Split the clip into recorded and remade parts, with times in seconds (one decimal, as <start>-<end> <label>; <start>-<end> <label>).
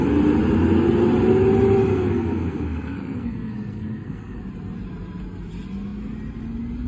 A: 0.0-1.9 recorded; 1.9-4.4 remade; 4.4-6.9 recorded